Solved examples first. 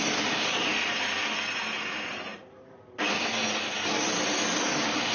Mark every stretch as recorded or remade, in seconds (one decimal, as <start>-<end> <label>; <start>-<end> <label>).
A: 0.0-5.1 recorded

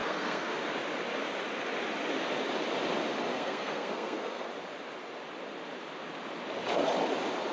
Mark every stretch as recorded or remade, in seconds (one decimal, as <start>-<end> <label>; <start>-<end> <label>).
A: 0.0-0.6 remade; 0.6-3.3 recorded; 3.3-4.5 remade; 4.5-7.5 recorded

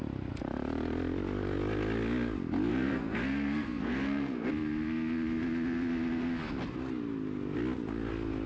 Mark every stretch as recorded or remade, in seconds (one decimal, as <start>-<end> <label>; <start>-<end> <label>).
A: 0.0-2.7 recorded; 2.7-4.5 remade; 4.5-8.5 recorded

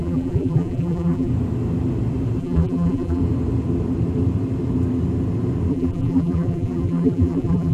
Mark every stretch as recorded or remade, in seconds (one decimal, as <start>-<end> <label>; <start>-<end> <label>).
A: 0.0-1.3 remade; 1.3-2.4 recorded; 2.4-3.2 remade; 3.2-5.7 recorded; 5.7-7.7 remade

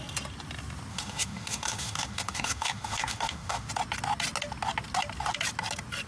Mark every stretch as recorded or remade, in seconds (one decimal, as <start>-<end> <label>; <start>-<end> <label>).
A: 0.0-0.9 recorded; 0.9-3.7 remade; 3.7-6.1 recorded

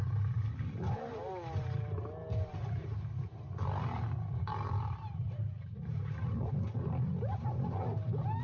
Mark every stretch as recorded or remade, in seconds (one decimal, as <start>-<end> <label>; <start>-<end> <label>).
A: 0.0-2.8 recorded; 2.8-3.4 remade; 3.4-4.5 recorded; 4.5-6.5 remade; 6.5-8.4 recorded

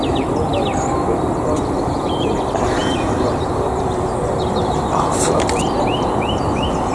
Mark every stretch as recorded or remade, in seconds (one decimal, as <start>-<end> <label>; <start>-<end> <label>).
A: 0.0-0.5 recorded; 0.5-1.3 remade; 1.3-2.8 recorded; 2.8-5.6 remade; 5.6-6.9 recorded

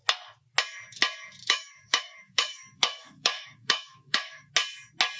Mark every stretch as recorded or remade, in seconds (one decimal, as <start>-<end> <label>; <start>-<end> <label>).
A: 0.0-1.4 recorded; 1.4-4.5 remade; 4.5-5.2 recorded